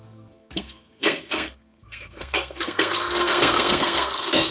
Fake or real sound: fake